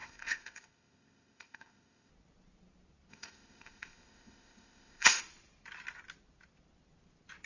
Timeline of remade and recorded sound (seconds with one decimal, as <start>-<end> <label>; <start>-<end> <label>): 0.0-2.1 remade; 2.1-3.1 recorded; 3.1-5.2 remade; 5.2-7.5 recorded